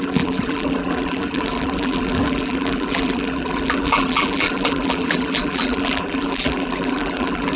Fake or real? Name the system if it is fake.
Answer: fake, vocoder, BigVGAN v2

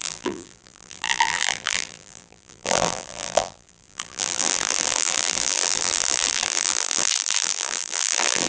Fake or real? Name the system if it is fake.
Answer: fake, vocoder, BigVGAN v2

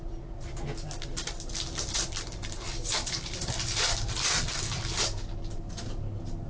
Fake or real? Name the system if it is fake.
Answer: real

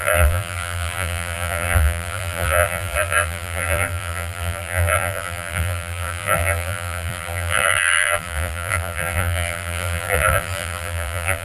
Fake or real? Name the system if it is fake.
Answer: fake, vocoder, BigVGAN v2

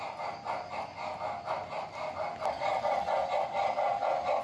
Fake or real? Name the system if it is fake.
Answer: real